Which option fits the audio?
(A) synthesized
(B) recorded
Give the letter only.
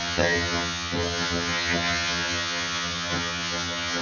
A